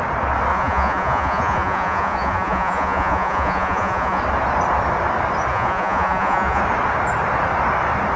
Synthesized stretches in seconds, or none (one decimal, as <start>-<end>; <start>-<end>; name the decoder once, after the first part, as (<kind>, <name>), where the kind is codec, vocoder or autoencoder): 0.5-4.2 (vocoder, Vocos); 5.5-6.6